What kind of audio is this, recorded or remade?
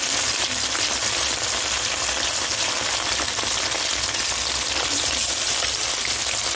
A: recorded